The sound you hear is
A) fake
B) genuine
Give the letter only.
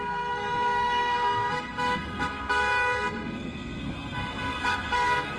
A